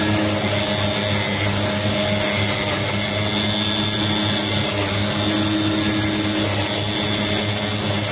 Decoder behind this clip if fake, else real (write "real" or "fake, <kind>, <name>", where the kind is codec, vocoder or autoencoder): real